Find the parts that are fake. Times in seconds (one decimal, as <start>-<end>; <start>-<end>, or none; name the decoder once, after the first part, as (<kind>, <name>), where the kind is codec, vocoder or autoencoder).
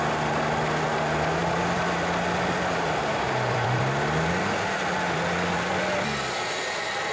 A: 1.4-5.7 (vocoder, BigVGAN v2)